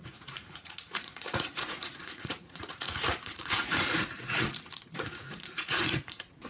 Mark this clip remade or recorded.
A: remade